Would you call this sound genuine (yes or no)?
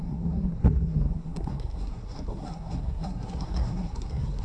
no